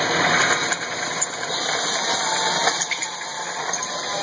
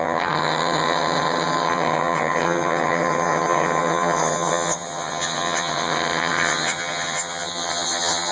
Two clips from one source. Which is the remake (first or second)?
second